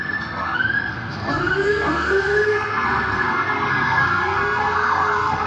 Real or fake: fake